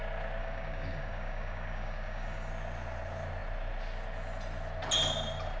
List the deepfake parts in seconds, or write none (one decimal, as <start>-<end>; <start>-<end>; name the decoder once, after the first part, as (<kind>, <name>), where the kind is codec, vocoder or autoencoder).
0.4-2.5 (codec, DAC)